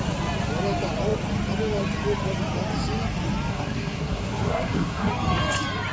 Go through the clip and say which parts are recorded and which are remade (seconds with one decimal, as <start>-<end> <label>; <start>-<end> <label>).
0.0-3.5 recorded; 3.5-5.1 remade; 5.1-5.9 recorded